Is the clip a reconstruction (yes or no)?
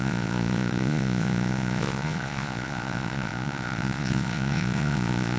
yes